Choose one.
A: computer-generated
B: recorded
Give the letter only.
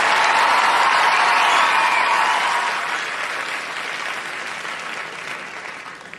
B